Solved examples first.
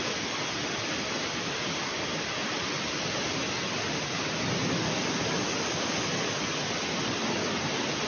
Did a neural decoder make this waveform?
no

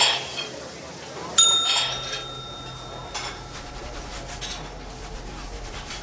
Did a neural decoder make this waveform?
no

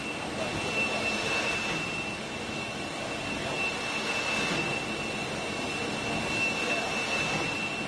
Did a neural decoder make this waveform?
no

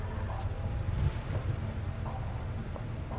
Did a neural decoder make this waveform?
no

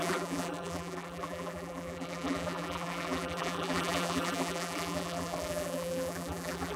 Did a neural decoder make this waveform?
yes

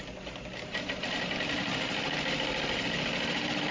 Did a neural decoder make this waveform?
no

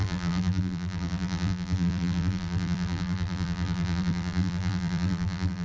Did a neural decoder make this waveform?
yes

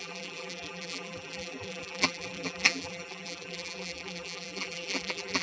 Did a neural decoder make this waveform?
yes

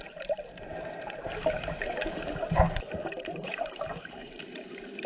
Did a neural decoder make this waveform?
yes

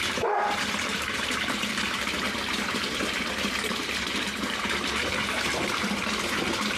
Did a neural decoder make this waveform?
yes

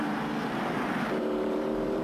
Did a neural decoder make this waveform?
yes